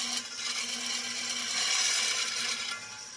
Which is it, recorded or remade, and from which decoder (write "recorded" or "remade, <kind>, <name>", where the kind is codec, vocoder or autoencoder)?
recorded